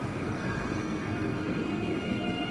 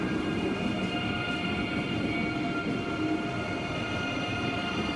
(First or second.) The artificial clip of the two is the first